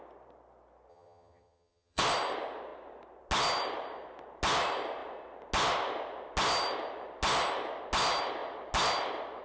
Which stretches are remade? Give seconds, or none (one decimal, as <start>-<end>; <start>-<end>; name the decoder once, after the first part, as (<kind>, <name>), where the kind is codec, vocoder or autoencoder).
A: 0.9-2.0 (vocoder, HiFi-GAN)